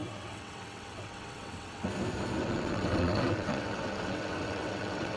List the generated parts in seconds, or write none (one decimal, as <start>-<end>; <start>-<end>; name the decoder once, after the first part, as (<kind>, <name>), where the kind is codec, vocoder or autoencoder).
0.0-1.9 (vocoder, WaveNeXt); 2.4-5.2